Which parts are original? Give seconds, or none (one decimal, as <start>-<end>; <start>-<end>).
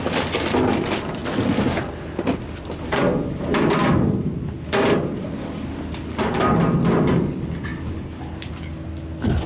0.0-9.5